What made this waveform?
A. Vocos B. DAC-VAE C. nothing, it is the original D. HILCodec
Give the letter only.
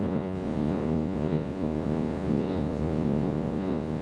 A